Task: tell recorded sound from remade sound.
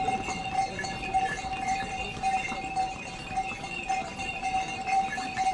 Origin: recorded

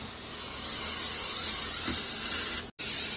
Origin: recorded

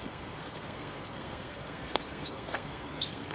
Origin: remade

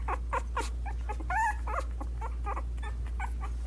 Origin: recorded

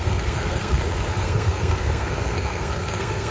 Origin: remade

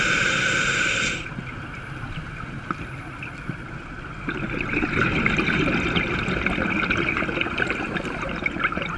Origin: recorded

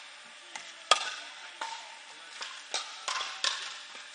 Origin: recorded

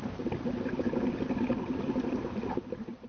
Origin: recorded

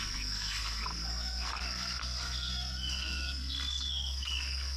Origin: remade